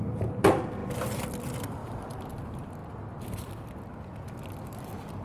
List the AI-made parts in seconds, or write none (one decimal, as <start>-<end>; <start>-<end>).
none